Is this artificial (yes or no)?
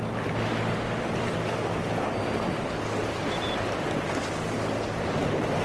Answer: no